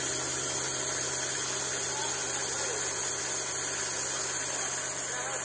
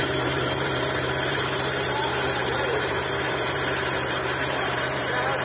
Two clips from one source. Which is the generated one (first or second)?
second